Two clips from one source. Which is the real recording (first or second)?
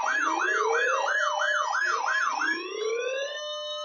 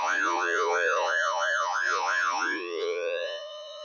first